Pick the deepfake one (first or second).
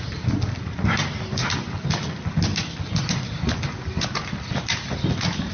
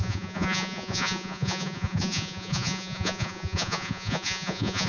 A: second